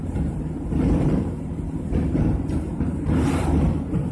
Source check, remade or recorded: remade